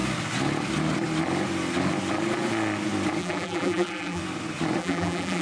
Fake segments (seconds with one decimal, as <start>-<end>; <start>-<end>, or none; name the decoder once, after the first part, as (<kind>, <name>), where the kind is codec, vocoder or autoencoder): 3.2-4.2 (vocoder, BigVGAN v2); 4.8-5.4